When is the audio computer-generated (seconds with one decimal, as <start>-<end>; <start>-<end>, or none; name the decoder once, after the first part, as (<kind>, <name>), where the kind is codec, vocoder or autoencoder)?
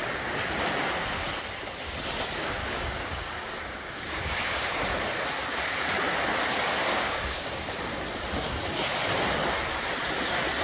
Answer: 2.6-4.9 (codec, DAC); 6.9-7.7